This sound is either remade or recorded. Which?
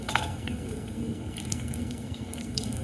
remade